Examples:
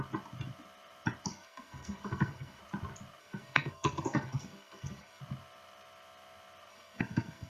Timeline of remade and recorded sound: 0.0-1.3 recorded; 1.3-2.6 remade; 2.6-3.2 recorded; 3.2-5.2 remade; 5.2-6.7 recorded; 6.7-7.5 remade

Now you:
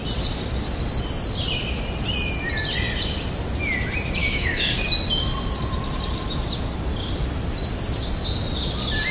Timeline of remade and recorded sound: 0.0-4.2 recorded; 4.2-4.9 remade; 4.9-9.1 recorded

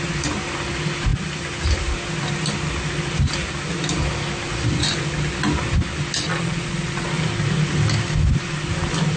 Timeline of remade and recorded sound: 0.0-6.3 recorded; 6.3-7.2 remade; 7.2-9.2 recorded

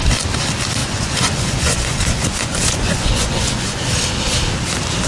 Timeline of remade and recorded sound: 0.0-0.8 recorded; 0.8-3.9 remade; 3.9-5.1 recorded

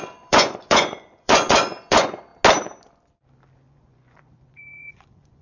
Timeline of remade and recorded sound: 0.0-2.3 remade; 2.3-3.6 recorded; 3.6-5.4 remade

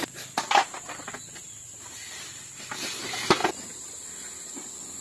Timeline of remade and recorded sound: 0.0-5.0 recorded

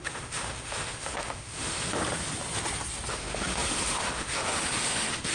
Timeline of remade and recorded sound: 0.0-2.0 remade; 2.0-3.1 recorded; 3.1-5.3 remade

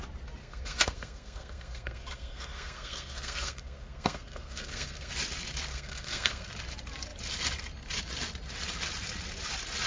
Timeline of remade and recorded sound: 0.0-0.4 recorded; 0.4-5.1 remade; 5.1-5.7 recorded; 5.7-6.5 remade; 6.5-9.9 recorded